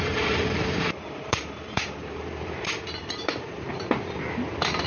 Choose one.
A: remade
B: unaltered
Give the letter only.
A